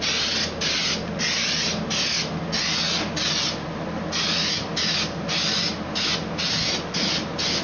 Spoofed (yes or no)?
no